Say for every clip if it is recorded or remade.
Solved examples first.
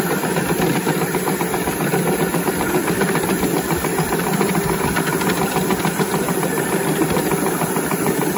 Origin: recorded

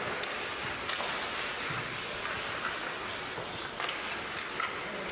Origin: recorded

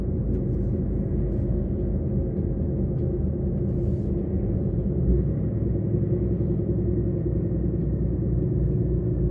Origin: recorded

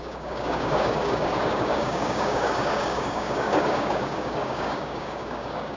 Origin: remade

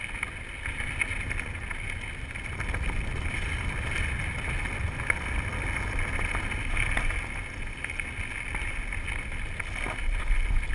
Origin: recorded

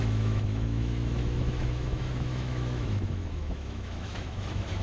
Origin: remade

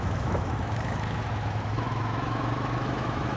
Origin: remade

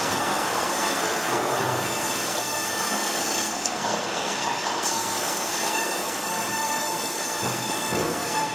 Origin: remade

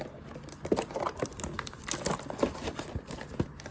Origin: recorded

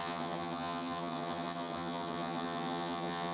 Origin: remade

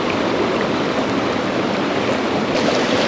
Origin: recorded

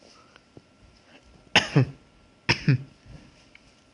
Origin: recorded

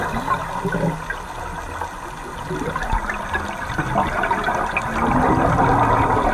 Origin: recorded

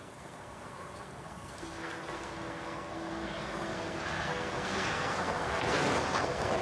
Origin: remade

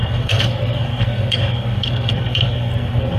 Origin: remade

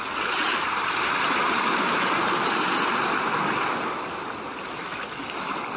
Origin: recorded